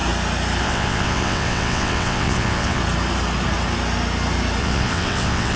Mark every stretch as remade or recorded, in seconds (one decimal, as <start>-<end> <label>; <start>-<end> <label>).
0.0-0.6 recorded; 0.6-2.8 remade; 2.8-4.6 recorded; 4.6-5.6 remade